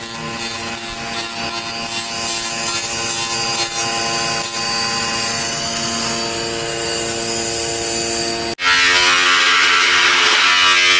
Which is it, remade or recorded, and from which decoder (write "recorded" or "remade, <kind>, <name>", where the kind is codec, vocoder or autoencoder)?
recorded